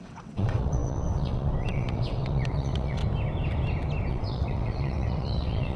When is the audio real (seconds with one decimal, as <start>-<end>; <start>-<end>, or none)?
3.0-4.1